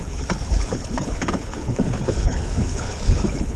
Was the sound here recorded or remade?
remade